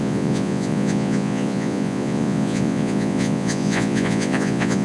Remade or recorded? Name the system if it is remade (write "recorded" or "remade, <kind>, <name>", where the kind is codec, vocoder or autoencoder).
remade, vocoder, Vocos